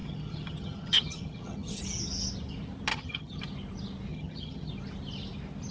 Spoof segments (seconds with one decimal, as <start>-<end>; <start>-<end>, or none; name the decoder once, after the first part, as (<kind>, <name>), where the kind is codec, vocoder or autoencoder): 0.0-1.8 (vocoder, HiFi-GAN); 2.9-3.4; 4.1-4.7